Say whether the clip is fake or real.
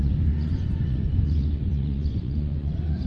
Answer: fake